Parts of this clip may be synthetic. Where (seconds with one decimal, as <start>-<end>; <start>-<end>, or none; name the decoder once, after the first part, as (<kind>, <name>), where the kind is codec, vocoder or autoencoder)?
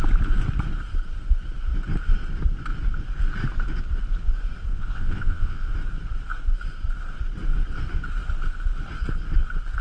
4.7-5.7 (vocoder, WaveNeXt)